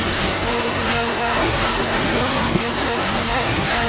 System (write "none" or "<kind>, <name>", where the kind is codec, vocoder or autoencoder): codec, SNAC